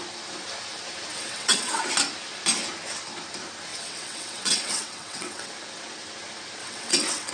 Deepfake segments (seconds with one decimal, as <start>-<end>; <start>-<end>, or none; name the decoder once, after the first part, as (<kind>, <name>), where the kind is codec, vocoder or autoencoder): 1.1-1.8 (vocoder, WaveNeXt); 3.7-5.5; 6.6-7.3